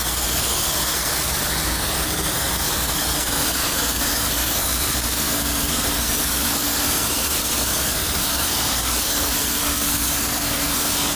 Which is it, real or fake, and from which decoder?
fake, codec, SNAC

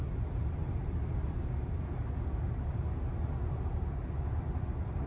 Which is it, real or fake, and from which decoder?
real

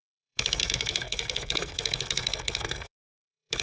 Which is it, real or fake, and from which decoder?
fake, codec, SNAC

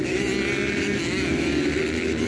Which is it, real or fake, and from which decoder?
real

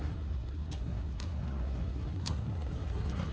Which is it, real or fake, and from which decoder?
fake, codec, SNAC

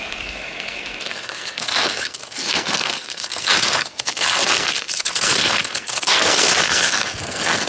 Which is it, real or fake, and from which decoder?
fake, codec, SNAC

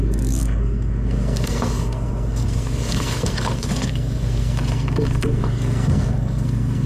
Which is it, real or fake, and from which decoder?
fake, codec, SNAC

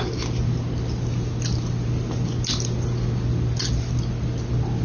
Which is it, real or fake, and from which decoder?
real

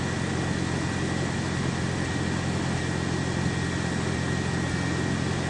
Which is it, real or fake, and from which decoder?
real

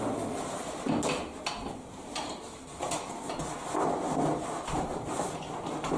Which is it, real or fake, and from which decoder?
real